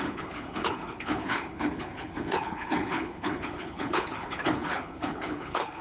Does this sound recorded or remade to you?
remade